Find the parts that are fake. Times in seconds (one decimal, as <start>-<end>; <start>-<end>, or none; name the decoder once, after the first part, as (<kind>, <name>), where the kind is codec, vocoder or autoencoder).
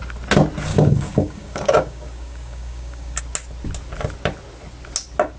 0.7-3.2 (codec, DAC)